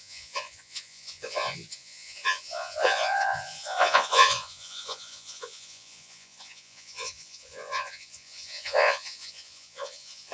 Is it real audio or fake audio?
fake